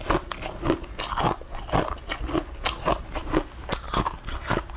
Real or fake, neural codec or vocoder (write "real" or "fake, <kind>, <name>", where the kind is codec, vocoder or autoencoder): real